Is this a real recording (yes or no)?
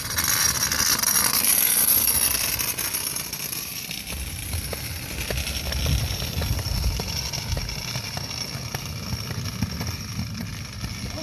yes